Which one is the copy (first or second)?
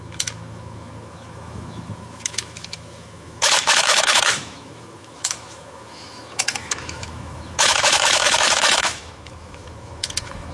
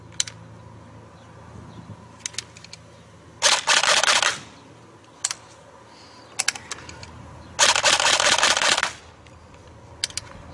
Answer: first